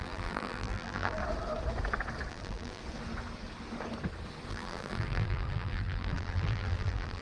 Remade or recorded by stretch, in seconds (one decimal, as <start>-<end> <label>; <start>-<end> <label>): 0.0-1.2 remade; 1.2-2.3 recorded; 2.3-2.8 remade; 2.8-4.5 recorded; 4.5-7.2 remade